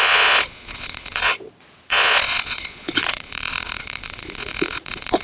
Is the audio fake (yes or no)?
yes